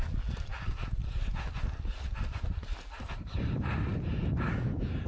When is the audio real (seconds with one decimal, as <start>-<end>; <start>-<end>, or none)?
0.0-5.1

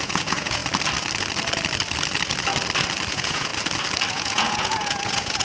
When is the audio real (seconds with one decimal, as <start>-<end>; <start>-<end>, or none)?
0.6-3.1; 3.5-4.1

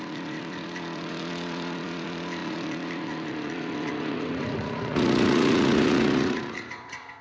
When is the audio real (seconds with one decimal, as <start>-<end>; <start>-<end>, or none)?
none

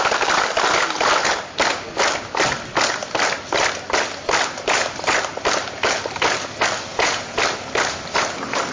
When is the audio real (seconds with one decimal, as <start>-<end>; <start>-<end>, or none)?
0.0-6.9; 7.4-8.7

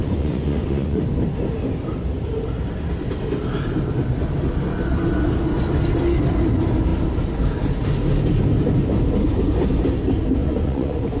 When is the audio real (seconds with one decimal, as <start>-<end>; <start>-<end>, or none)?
1.0-10.4

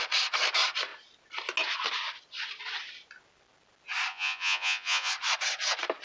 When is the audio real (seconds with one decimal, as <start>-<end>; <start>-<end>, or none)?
0.0-4.1; 5.1-6.0

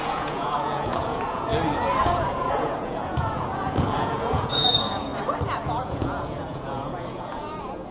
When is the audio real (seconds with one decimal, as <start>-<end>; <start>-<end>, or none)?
1.5-2.0; 5.1-5.8